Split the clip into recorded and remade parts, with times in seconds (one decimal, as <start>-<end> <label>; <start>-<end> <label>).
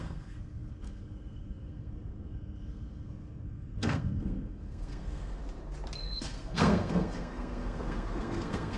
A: 0.0-5.4 remade; 5.4-6.0 recorded; 6.0-8.8 remade